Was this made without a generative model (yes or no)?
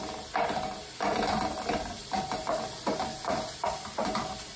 yes